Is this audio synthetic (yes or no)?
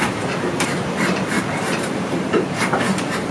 yes